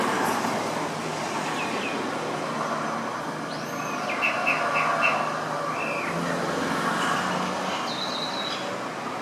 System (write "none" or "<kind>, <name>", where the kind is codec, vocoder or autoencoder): none